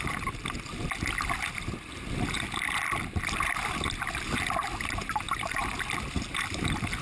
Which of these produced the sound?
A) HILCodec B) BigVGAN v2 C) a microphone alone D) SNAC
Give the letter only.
C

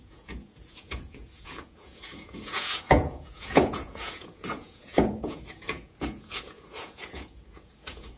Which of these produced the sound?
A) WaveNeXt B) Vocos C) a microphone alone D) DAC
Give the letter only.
B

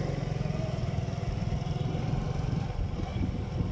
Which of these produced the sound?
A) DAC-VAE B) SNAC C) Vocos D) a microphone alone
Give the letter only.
D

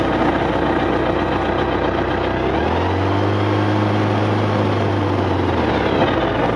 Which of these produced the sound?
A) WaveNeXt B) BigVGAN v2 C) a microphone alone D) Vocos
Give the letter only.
C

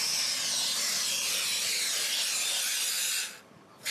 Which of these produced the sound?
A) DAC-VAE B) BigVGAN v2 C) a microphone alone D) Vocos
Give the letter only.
C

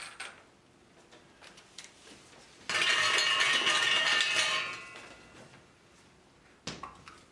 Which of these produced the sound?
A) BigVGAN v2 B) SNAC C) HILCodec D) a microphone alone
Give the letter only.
D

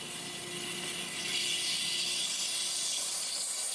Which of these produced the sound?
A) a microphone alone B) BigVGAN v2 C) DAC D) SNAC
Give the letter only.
A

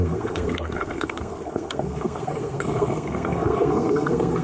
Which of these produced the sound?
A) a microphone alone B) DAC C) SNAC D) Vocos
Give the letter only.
C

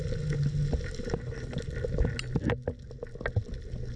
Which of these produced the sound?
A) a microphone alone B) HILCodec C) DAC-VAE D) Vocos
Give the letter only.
A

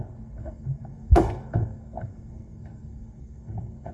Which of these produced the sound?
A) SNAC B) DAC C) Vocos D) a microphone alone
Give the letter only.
A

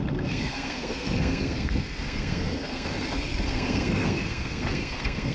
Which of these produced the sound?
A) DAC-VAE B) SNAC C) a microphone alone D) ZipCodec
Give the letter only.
B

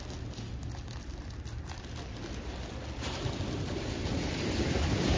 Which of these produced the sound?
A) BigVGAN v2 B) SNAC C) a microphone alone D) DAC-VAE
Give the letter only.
C